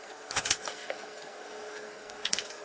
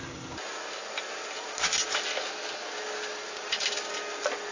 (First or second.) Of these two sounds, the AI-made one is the first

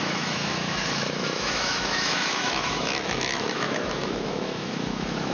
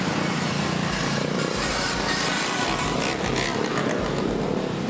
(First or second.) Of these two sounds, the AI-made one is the first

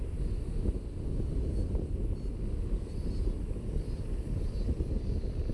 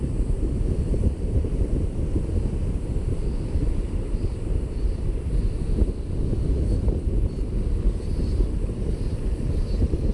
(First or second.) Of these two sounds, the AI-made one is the second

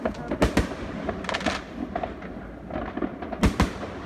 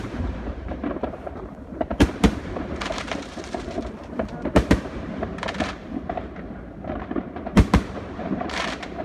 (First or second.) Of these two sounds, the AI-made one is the second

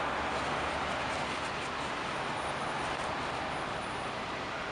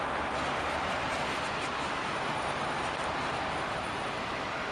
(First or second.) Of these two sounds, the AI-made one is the second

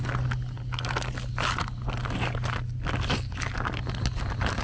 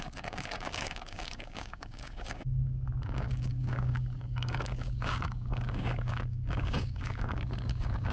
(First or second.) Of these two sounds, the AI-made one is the second